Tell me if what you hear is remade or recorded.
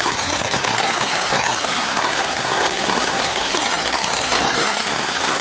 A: remade